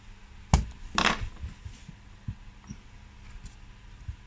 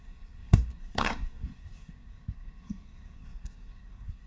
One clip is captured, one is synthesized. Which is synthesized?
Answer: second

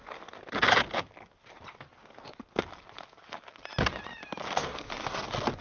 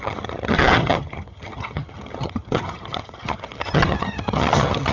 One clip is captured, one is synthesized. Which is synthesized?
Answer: second